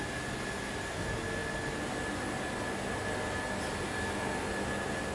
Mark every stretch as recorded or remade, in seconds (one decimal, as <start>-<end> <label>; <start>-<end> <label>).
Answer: 0.0-5.1 recorded